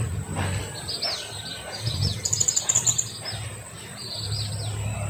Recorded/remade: recorded